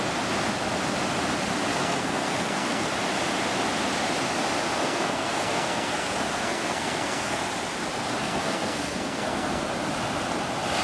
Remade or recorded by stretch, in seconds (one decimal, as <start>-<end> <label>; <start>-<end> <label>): 0.0-1.7 recorded; 1.7-2.9 remade; 2.9-4.8 recorded; 4.8-7.4 remade; 7.4-8.2 recorded; 8.2-9.6 remade; 9.6-10.8 recorded